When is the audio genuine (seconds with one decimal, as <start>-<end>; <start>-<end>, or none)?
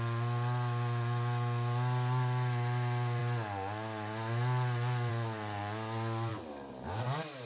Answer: 0.0-6.3; 7.0-7.5